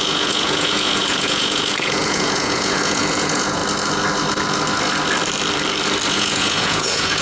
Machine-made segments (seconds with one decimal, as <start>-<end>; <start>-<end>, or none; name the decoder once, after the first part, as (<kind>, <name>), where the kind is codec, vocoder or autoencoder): 0.0-3.6 (vocoder, Vocos); 6.1-7.2